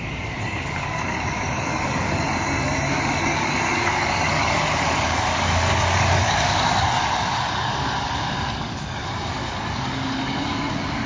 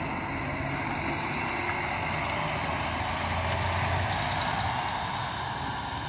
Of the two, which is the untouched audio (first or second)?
second